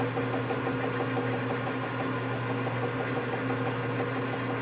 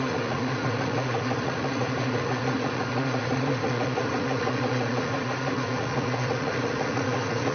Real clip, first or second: first